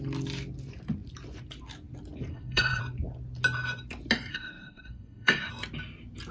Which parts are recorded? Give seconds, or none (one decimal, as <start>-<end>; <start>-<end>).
0.0-2.3; 2.8-4.3; 5.5-6.3